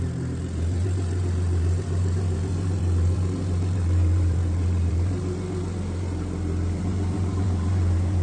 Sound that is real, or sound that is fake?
fake